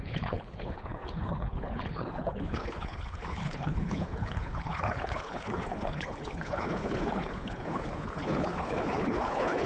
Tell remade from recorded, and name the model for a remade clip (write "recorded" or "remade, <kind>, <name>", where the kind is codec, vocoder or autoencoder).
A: remade, codec, HILCodec